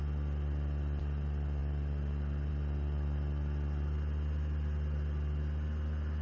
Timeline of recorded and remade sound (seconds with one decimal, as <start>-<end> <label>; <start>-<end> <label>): 0.0-6.2 recorded